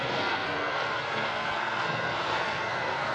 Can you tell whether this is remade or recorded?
remade